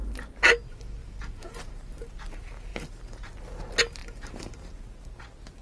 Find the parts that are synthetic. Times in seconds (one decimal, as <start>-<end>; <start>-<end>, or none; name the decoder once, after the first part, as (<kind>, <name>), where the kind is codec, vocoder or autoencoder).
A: 1.0-2.0 (vocoder, BigVGAN v2); 2.7-3.3; 4.0-4.7

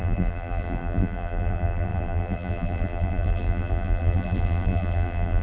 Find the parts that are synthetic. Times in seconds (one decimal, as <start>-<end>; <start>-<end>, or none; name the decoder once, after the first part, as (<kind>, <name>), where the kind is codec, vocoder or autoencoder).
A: 0.0-5.4 (vocoder, BigVGAN v2)

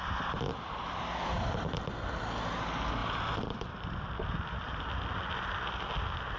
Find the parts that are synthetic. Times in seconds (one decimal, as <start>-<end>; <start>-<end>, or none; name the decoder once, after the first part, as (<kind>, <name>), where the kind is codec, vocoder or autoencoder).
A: 0.5-1.2 (vocoder, BigVGAN v2); 3.0-5.0

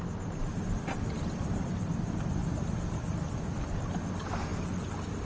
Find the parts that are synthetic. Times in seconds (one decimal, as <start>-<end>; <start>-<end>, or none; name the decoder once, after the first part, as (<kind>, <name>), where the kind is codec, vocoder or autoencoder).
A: 0.4-1.7 (vocoder, BigVGAN v2)

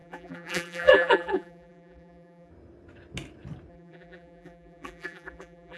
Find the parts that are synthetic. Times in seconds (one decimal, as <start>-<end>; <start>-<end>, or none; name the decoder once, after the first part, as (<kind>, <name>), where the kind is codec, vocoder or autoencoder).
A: 0.0-2.5 (vocoder, BigVGAN v2); 3.7-5.8

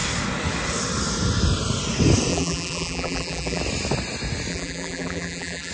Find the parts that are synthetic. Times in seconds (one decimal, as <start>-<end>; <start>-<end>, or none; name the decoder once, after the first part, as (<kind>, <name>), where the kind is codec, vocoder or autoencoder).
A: 2.3-3.6 (vocoder, BigVGAN v2); 4.5-5.7

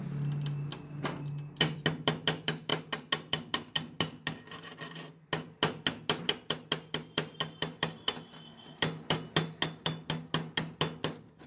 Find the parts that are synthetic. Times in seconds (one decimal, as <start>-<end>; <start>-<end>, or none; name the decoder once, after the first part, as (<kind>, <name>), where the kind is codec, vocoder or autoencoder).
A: none